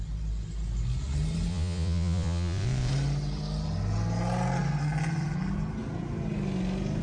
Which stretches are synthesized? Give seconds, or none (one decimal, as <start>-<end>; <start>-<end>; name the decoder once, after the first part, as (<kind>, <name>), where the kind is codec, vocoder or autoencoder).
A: 1.5-2.9 (vocoder, Vocos)